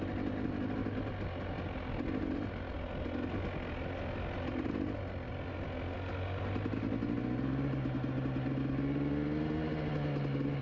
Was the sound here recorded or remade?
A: recorded